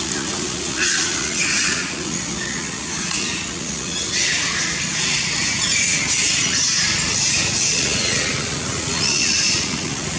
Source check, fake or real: fake